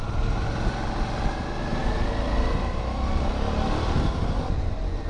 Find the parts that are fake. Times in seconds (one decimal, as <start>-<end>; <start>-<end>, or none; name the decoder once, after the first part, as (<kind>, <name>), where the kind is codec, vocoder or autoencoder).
1.8-4.4 (vocoder, BigVGAN v2)